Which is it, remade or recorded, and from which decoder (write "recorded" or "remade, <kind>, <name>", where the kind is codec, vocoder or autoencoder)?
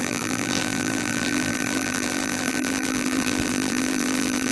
remade, vocoder, BigVGAN v2